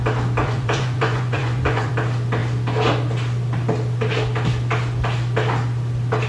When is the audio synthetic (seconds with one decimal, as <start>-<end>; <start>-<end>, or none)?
0.4-1.9